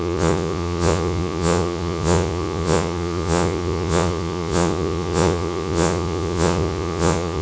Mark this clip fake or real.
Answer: fake